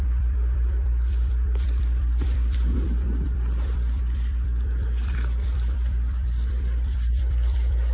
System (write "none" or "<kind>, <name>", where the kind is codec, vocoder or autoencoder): vocoder, BigVGAN v2